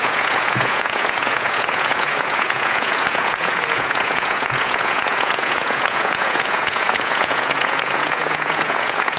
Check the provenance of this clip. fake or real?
fake